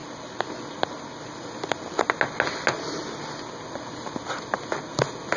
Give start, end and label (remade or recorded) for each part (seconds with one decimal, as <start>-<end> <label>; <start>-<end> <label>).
0.0-5.4 recorded